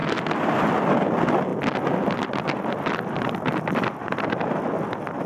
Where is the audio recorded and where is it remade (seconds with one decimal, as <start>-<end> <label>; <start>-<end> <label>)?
0.0-5.3 recorded